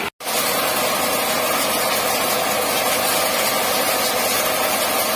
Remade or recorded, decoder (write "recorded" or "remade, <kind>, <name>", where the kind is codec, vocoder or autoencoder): recorded